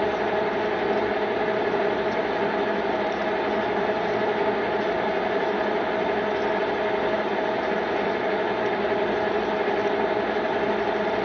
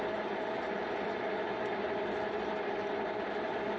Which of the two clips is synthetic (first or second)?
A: second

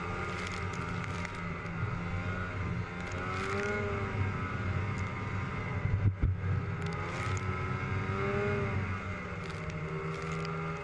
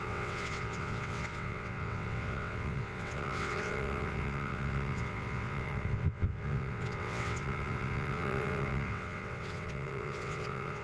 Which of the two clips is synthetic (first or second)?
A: second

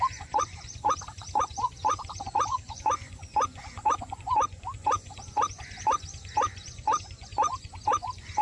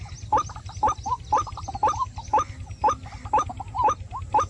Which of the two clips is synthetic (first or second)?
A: first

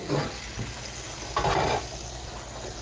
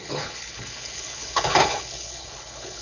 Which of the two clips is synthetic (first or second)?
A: second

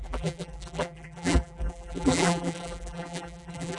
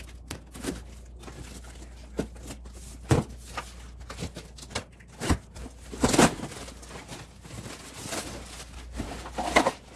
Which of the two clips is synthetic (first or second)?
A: first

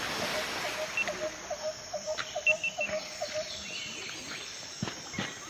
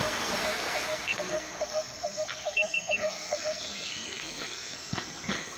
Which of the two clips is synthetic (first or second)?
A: second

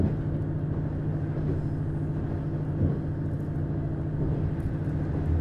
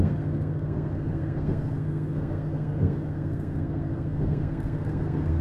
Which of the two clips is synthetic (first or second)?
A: second